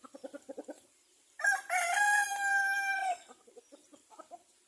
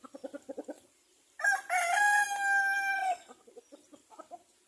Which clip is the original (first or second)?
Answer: second